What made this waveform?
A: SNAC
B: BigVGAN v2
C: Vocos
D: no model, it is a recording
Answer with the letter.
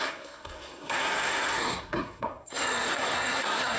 A